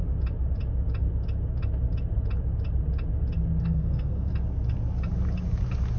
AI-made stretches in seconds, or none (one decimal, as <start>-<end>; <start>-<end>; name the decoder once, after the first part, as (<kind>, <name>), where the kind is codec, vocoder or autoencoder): 3.6-4.3 (codec, SNAC)